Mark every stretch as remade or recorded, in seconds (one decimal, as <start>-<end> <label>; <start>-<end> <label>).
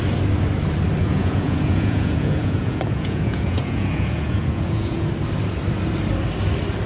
0.0-1.0 recorded; 1.0-5.1 remade; 5.1-6.9 recorded